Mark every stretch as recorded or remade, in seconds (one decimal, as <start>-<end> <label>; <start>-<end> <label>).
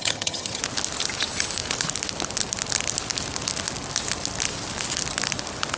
0.0-0.6 remade; 0.6-5.8 recorded